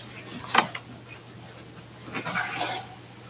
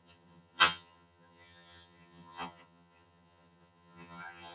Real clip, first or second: first